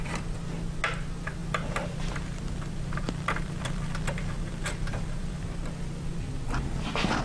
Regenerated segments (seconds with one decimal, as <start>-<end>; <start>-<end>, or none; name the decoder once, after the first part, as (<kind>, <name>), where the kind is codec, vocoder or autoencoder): 1.4-5.4 (vocoder, BigVGAN v2)